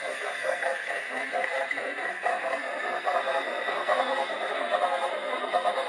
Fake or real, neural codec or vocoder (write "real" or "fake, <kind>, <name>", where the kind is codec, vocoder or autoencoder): fake, codec, SNAC